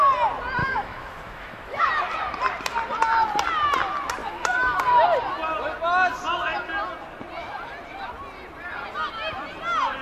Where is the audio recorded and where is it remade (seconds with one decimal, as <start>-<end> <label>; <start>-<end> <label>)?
0.0-0.6 recorded; 0.6-1.9 remade; 1.9-4.2 recorded; 4.2-4.8 remade; 4.8-10.0 recorded

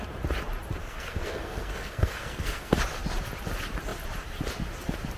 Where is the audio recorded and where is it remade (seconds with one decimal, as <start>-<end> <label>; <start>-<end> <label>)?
0.0-0.8 recorded; 0.8-2.7 remade; 2.7-5.2 recorded

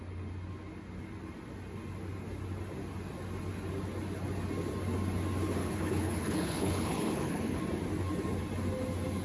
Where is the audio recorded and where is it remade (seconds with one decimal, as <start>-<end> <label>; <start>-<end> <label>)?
0.0-5.6 recorded; 5.6-7.6 remade; 7.6-9.2 recorded

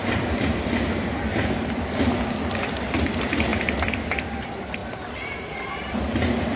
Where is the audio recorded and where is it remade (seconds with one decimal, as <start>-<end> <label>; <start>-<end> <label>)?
0.0-0.8 recorded; 0.8-6.6 remade

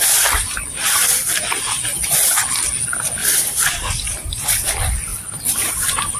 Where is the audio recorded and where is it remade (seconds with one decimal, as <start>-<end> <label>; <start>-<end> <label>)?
0.0-3.2 recorded; 3.2-4.3 remade; 4.3-5.1 recorded; 5.1-6.2 remade

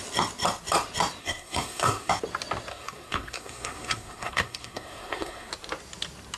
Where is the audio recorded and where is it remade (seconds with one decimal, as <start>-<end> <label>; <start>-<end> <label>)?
0.0-1.2 recorded; 1.2-2.1 remade; 2.1-2.7 recorded; 2.7-5.5 remade; 5.5-6.4 recorded

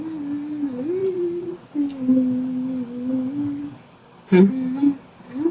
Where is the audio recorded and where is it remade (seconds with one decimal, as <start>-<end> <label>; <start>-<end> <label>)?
0.0-1.0 recorded; 1.0-1.7 remade; 1.7-5.5 recorded

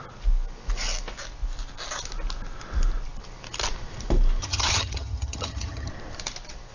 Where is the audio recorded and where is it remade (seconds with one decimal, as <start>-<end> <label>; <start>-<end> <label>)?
0.0-4.4 recorded; 4.4-5.9 remade; 5.9-6.7 recorded